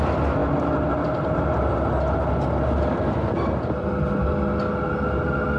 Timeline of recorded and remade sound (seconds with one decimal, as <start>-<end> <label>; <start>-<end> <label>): 0.0-5.6 recorded